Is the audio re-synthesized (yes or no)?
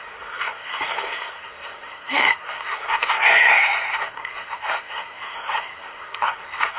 yes